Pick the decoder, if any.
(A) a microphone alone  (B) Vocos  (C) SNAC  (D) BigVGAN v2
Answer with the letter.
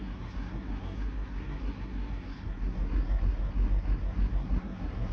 C